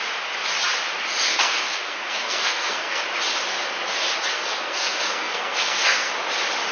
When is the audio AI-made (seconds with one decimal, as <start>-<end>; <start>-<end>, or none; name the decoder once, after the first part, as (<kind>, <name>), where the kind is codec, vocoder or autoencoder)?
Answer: 1.3-3.0 (codec, SNAC); 4.3-6.1